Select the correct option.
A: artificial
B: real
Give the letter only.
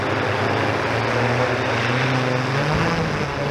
B